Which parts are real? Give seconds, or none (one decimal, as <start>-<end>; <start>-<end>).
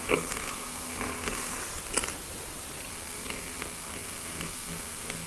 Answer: 1.6-2.9